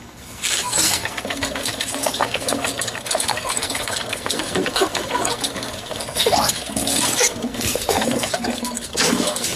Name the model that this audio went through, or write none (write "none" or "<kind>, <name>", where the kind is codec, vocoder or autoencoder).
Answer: codec, SNAC